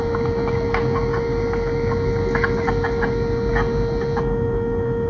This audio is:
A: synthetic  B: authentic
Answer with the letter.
B